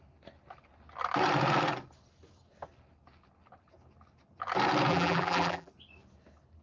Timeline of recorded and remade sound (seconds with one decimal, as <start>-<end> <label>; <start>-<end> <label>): 0.0-4.9 recorded; 4.9-5.7 remade; 5.7-6.6 recorded